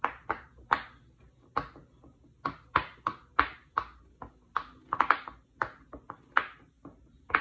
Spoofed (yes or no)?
no